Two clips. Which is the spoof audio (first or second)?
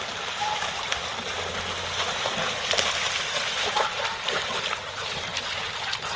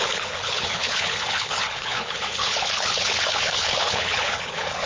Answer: second